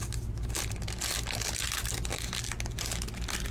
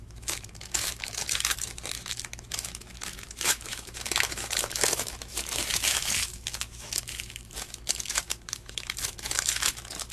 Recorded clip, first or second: first